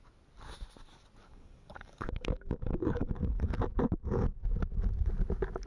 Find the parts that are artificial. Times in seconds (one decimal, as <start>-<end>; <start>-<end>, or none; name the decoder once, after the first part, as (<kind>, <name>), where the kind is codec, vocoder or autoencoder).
1.2-3.6 (codec, DAC)